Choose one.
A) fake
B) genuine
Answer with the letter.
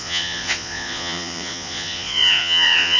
A